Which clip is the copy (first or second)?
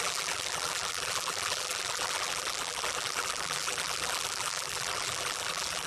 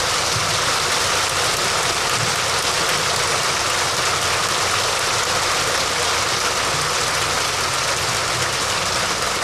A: first